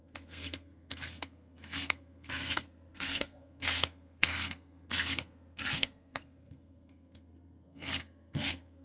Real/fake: fake